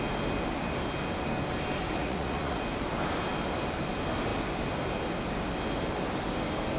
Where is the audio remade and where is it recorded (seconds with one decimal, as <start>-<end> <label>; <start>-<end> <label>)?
0.0-2.0 recorded; 2.0-2.6 remade; 2.6-6.8 recorded